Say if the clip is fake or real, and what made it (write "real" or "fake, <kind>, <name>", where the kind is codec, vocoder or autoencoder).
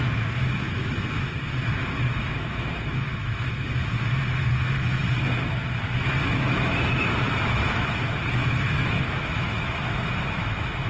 fake, autoencoder, DAC-VAE